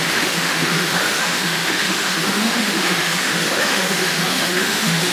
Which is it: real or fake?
fake